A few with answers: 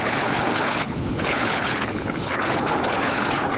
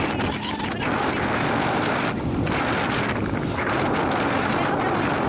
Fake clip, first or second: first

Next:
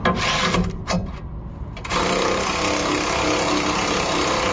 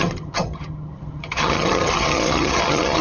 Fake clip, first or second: second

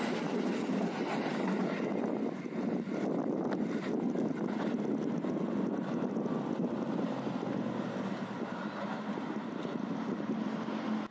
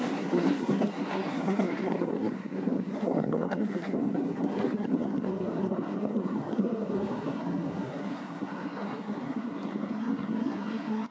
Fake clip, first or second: second